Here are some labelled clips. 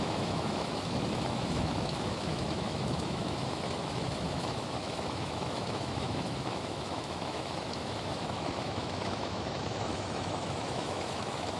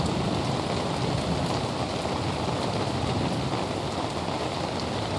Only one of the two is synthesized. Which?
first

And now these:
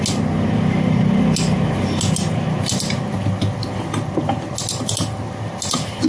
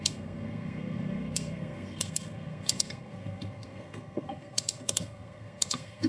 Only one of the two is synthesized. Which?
second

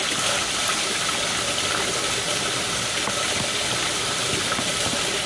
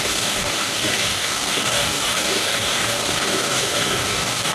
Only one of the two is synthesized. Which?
second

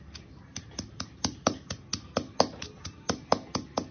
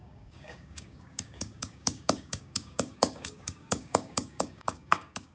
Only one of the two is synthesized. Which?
second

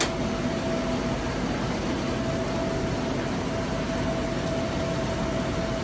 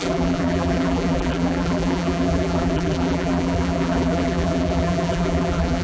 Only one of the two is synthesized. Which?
second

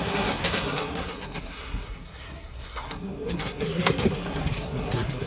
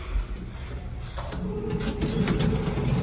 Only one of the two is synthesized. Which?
first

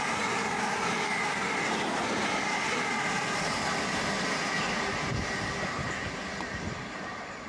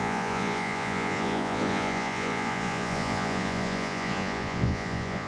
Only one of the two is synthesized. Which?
second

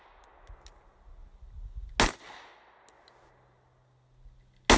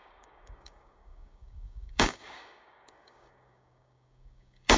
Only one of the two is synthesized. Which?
second